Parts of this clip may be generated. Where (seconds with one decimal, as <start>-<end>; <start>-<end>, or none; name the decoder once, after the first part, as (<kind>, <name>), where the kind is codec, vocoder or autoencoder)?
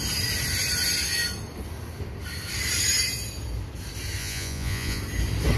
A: 4.2-5.0 (vocoder, Vocos)